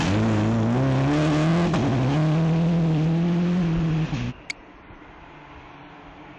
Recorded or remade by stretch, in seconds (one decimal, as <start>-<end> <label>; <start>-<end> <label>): 0.0-6.4 recorded